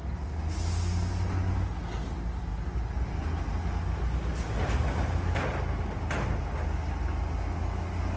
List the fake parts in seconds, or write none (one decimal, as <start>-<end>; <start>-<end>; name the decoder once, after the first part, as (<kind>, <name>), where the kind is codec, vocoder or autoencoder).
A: none